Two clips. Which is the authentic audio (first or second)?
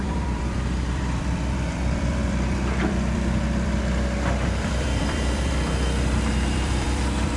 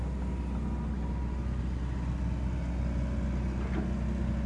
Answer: second